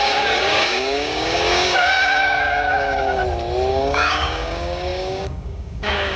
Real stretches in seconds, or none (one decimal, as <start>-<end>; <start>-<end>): 3.2-3.7